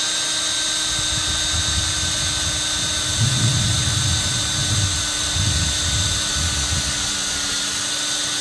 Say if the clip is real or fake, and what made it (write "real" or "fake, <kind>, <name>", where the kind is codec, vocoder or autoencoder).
real